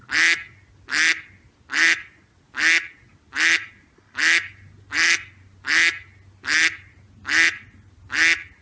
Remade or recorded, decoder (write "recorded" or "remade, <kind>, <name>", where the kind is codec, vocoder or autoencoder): recorded